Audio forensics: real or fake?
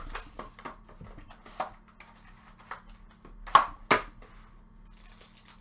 real